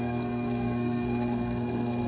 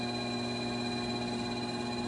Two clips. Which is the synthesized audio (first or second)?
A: first